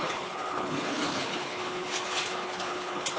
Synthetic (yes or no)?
yes